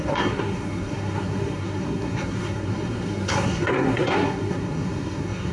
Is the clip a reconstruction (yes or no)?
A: yes